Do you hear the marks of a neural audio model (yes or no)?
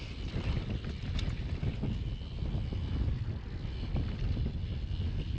no